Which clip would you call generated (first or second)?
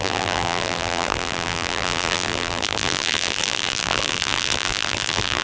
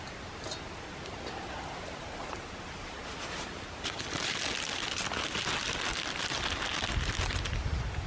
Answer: first